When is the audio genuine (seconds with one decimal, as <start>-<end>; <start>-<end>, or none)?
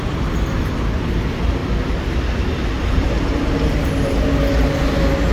0.0-5.3